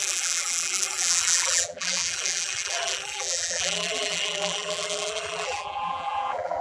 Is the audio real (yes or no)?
no